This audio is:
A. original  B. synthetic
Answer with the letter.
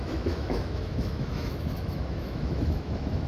B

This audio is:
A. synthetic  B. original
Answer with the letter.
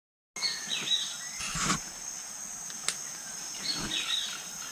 B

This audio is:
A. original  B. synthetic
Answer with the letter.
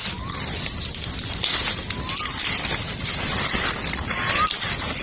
A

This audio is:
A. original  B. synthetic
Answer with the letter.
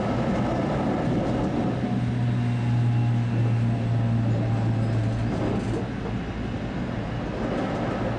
A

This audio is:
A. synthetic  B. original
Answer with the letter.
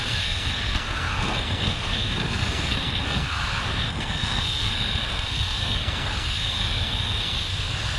A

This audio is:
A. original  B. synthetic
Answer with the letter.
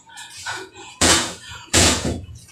B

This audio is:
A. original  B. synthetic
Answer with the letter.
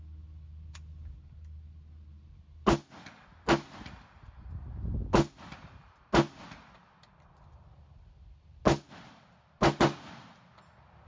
A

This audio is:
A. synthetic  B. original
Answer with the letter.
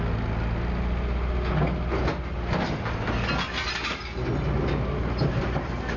B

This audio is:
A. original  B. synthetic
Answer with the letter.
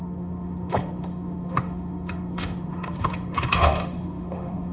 B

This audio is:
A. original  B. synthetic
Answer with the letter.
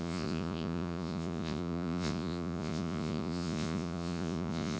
B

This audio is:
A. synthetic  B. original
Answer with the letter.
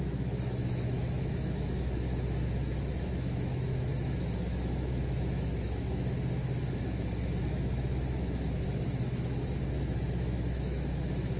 A